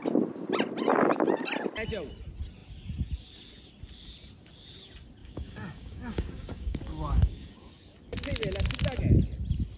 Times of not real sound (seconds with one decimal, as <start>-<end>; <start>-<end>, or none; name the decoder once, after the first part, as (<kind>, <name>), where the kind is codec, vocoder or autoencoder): 5.2-7.7 (codec, DAC)